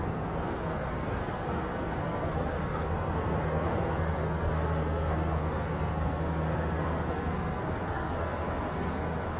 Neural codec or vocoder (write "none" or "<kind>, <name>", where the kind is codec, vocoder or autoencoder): codec, SNAC